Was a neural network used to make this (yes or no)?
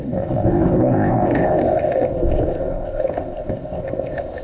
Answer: yes